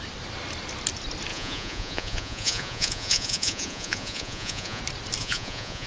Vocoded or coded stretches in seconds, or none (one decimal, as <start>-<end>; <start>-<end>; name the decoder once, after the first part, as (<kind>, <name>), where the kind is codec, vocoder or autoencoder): 1.3-4.8 (vocoder, Vocos); 5.2-5.9